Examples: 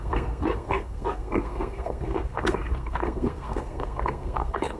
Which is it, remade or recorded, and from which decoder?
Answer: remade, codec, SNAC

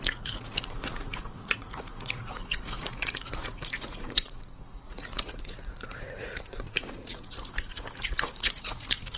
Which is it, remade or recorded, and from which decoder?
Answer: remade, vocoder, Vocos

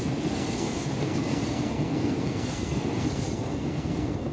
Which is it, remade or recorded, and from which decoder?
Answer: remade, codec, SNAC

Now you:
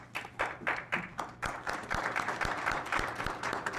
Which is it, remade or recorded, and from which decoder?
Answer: remade, vocoder, BigVGAN v2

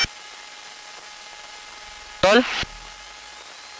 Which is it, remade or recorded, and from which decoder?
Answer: recorded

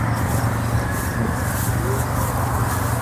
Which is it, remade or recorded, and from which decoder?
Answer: recorded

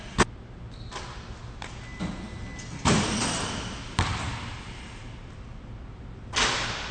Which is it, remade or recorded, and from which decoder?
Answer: recorded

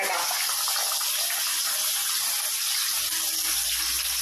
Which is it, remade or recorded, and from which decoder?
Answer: recorded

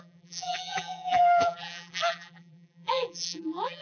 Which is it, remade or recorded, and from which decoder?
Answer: remade, vocoder, BigVGAN v2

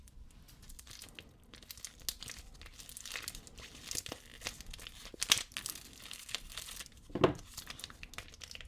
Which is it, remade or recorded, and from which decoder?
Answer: recorded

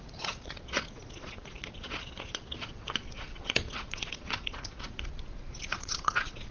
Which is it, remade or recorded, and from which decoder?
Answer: remade, vocoder, Vocos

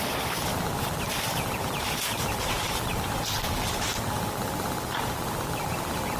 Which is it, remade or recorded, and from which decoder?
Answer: remade, vocoder, BigVGAN v2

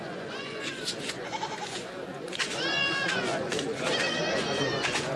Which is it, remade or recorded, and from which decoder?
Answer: remade, vocoder, Vocos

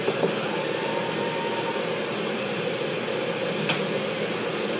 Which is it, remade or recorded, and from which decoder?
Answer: recorded